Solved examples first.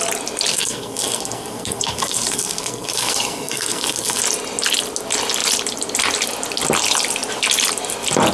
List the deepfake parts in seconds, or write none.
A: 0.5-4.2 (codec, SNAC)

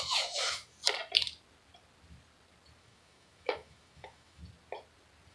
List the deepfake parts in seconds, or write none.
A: 0.0-0.8 (autoencoder, DAC-VAE); 2.8-4.4

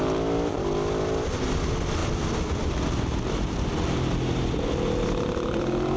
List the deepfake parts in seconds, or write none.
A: none

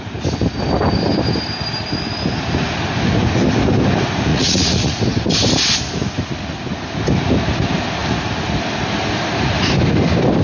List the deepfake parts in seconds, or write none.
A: 4.3-5.0 (vocoder, Vocos)

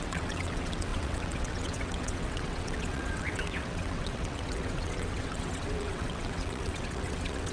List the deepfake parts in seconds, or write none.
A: 0.0-7.5 (vocoder, WaveNeXt)

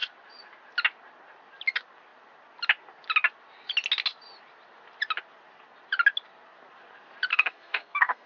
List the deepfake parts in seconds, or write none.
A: 7.3-8.3 (codec, SNAC)

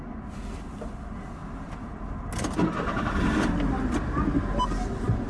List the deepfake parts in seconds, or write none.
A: none

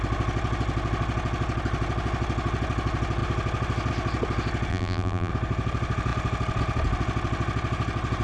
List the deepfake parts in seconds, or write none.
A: 4.7-5.3 (vocoder, BigVGAN v2)